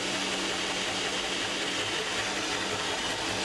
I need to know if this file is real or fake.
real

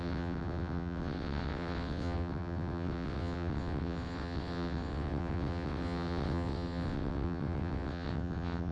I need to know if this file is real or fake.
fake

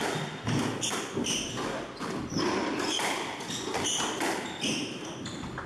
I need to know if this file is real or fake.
real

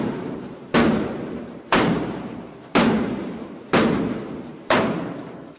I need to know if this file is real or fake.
fake